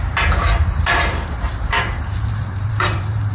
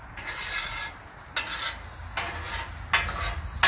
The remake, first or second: first